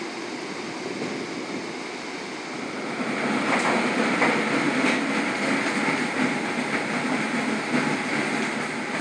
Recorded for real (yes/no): yes